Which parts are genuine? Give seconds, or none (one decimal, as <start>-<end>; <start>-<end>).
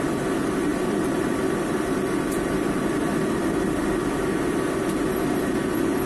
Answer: 0.0-0.7; 4.0-6.1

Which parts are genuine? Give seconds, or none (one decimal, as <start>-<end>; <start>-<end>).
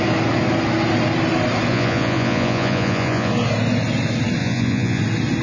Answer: 0.0-1.7; 3.3-4.4; 5.0-5.4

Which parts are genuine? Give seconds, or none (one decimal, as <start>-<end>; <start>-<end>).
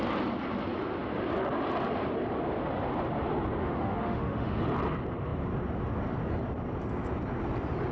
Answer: 0.0-3.6; 4.6-7.9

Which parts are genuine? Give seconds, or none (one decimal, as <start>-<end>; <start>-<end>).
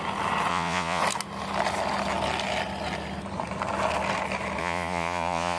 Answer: 0.0-0.5; 1.0-4.6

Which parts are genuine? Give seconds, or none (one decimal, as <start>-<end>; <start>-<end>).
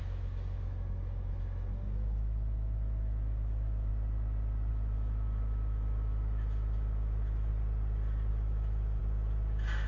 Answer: 3.9-4.7; 7.5-8.3; 9.0-9.9